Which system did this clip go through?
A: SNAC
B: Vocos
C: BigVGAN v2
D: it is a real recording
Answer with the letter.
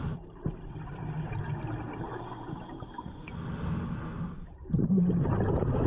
D